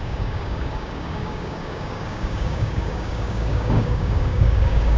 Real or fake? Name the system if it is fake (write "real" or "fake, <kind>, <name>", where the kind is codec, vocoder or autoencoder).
fake, codec, DAC